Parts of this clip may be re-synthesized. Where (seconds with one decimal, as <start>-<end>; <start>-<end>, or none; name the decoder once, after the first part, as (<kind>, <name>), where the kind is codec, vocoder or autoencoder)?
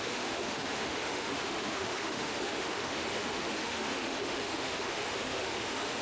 0.0-6.0 (autoencoder, DAC-VAE)